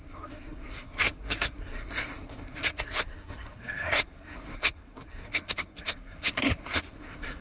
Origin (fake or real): fake